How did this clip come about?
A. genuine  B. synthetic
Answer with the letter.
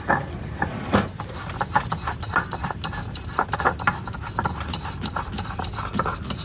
A